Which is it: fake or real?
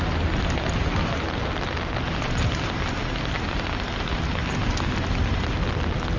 real